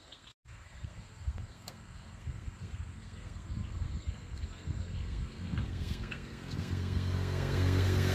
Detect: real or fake fake